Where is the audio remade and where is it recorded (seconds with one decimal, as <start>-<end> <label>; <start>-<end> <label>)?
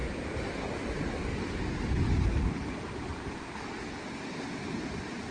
0.0-2.5 recorded; 2.5-3.1 remade; 3.1-5.3 recorded